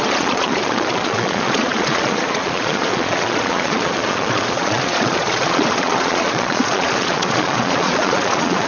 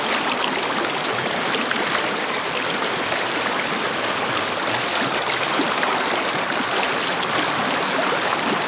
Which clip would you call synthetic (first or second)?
first